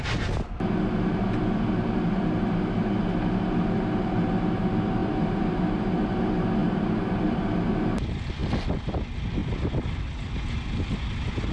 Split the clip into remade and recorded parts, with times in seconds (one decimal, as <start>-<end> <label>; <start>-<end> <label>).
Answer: 0.0-5.0 recorded; 5.0-5.6 remade; 5.6-6.6 recorded; 6.6-7.4 remade; 7.4-9.4 recorded; 9.4-10.3 remade; 10.3-11.5 recorded